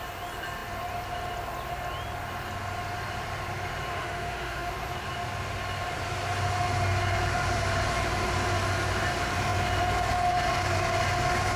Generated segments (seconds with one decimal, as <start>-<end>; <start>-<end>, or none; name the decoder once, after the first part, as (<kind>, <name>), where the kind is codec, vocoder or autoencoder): 3.9-4.7 (autoencoder, DAC-VAE)